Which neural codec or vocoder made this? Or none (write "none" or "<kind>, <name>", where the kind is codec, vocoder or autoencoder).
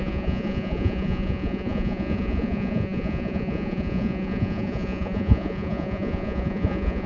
vocoder, Vocos